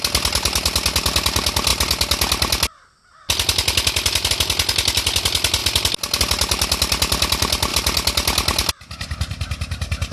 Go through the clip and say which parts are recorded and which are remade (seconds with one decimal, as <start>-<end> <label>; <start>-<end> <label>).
0.0-10.1 recorded